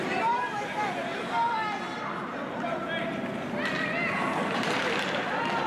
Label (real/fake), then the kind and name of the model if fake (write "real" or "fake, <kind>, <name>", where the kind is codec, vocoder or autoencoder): real